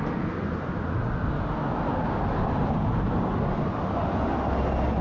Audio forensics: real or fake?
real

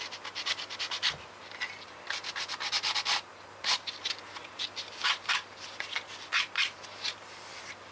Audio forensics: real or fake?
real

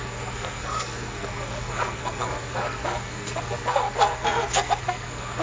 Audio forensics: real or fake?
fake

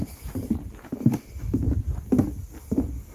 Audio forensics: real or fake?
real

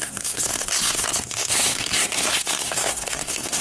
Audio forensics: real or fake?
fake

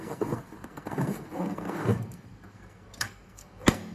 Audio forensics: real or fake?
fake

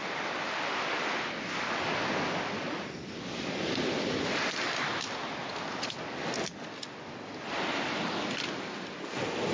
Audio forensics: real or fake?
real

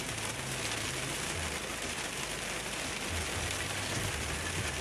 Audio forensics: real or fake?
real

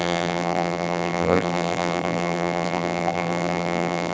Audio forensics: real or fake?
fake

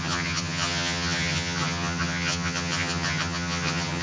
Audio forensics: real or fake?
fake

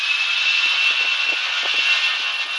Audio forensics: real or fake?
real